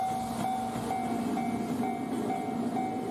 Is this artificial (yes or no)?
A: no